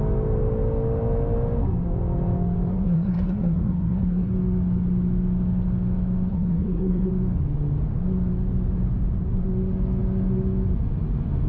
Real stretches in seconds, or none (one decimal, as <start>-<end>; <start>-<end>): 0.0-2.7; 4.3-6.3; 7.1-11.5